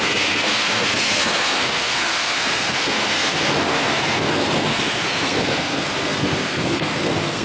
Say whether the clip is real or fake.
fake